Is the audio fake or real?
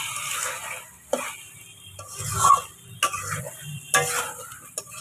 real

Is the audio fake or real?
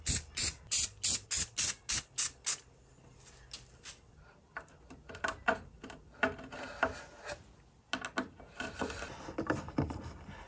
real